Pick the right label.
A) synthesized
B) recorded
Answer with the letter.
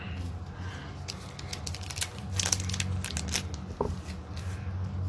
B